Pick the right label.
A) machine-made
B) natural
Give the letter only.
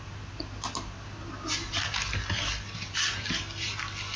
B